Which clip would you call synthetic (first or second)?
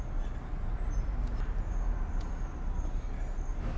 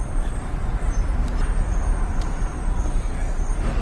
second